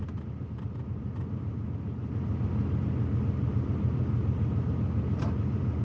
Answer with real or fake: fake